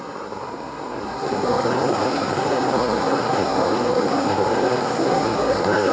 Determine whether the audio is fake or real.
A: fake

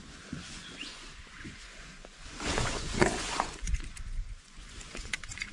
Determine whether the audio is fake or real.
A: fake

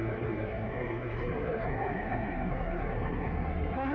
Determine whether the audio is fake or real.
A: fake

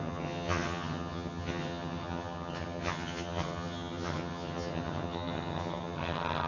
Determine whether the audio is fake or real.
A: fake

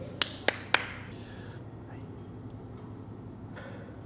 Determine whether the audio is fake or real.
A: real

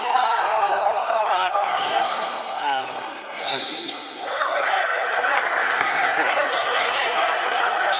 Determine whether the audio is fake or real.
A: fake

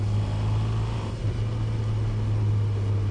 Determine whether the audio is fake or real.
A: real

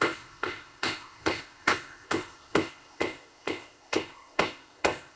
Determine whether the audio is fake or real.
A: fake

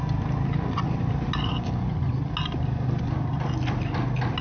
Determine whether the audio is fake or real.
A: real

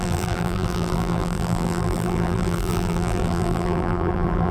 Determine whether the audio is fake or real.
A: fake